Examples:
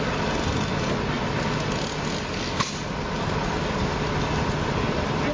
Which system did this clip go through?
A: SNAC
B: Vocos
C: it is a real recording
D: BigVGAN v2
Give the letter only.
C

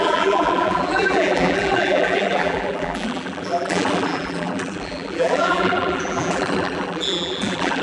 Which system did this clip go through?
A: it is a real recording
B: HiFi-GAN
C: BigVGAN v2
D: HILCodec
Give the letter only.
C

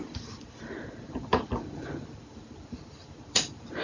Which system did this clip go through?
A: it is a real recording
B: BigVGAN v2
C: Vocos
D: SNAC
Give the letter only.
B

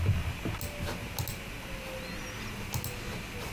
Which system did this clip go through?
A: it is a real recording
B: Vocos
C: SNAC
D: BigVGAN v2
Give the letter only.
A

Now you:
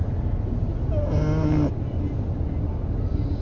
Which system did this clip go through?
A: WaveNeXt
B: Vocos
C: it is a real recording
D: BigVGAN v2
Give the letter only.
C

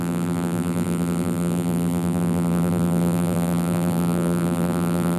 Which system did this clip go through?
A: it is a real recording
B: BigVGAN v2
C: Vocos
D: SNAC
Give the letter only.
B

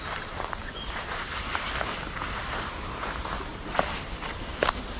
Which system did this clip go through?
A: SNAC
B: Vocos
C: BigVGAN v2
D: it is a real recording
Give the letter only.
C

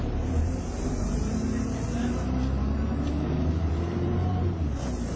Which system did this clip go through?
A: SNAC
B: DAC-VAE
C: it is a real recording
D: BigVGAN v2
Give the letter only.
D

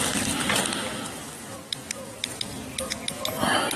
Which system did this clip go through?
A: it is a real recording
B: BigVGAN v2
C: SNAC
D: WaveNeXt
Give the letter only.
A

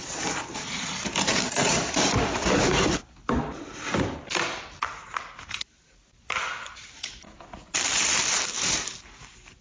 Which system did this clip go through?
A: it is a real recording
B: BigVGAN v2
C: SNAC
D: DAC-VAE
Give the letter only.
B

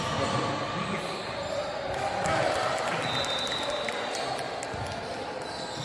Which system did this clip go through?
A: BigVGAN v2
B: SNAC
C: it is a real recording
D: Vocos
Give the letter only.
C